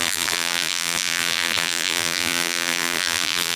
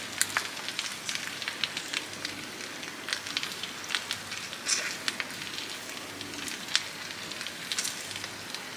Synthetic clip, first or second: first